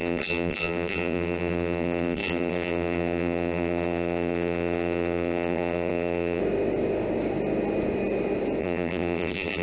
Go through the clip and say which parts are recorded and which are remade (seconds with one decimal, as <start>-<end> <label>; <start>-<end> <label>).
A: 0.0-6.4 remade; 6.4-8.6 recorded; 8.6-9.6 remade